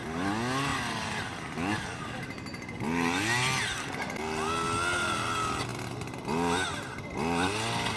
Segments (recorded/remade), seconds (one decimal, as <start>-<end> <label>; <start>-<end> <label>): 0.0-8.0 recorded

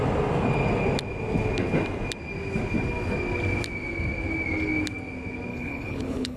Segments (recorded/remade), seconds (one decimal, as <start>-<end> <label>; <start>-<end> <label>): 0.0-5.5 recorded; 5.5-6.4 remade